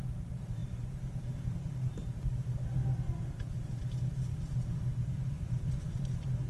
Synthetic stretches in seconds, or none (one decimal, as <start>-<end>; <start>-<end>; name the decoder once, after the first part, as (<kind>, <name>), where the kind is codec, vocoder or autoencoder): 0.0-0.6 (vocoder, BigVGAN v2); 2.2-2.8; 4.7-6.5